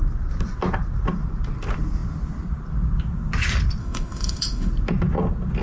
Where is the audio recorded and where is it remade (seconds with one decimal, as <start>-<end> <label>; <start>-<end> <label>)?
0.0-3.8 recorded; 3.8-4.7 remade; 4.7-5.6 recorded